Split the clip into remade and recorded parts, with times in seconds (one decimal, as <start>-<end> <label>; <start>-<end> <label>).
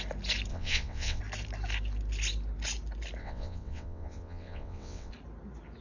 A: 0.0-0.5 recorded; 0.5-1.2 remade; 1.2-3.2 recorded; 3.2-5.1 remade; 5.1-5.8 recorded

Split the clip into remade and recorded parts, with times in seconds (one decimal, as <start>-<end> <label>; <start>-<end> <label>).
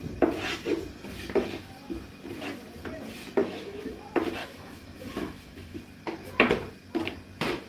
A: 0.0-3.4 recorded; 3.4-4.0 remade; 4.0-4.4 recorded; 4.4-5.8 remade; 5.8-7.7 recorded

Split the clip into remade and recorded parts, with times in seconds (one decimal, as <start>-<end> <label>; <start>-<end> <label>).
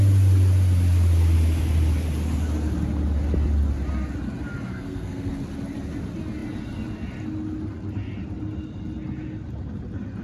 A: 0.0-4.7 recorded; 4.7-5.3 remade; 5.3-10.2 recorded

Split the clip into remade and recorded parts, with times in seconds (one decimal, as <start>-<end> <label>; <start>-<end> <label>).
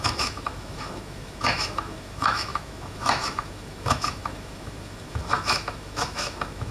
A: 0.0-6.7 remade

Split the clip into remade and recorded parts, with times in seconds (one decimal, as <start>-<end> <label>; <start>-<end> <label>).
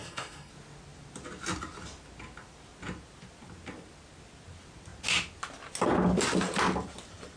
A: 0.0-0.5 remade; 0.5-7.4 recorded